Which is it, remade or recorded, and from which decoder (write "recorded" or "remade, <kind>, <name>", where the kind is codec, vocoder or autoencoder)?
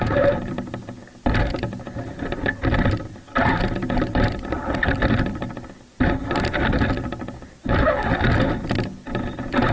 recorded